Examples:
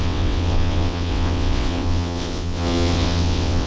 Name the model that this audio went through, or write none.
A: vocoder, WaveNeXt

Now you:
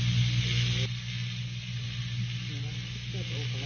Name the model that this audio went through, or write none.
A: none